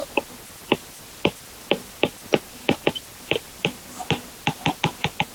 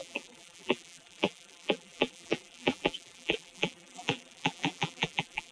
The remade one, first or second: second